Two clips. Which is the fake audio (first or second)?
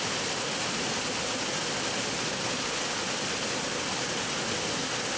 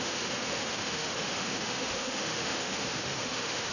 second